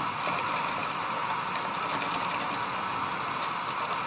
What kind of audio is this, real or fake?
real